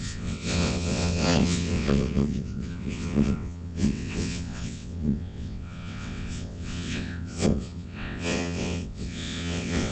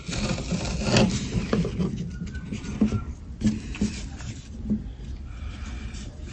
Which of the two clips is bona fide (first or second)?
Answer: second